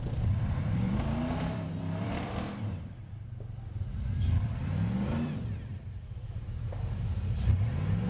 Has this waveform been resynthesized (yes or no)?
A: yes